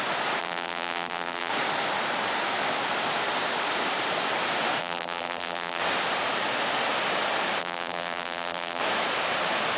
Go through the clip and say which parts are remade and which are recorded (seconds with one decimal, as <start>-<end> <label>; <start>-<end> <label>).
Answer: 0.0-0.4 recorded; 0.4-1.5 remade; 1.5-4.8 recorded; 4.8-5.8 remade; 5.8-7.6 recorded; 7.6-8.8 remade; 8.8-9.8 recorded